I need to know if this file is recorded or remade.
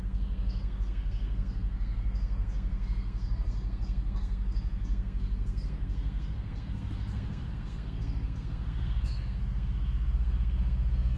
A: remade